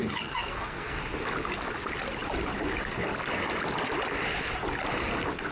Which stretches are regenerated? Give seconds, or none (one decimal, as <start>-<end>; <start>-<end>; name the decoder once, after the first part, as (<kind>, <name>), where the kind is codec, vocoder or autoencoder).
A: 0.0-1.0 (codec, SNAC)